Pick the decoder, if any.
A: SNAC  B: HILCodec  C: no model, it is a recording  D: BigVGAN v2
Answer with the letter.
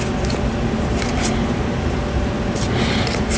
C